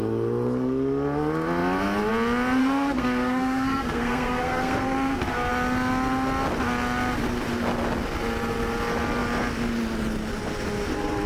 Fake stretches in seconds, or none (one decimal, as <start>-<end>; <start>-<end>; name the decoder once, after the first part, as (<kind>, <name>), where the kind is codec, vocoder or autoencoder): 2.6-5.5 (codec, SNAC)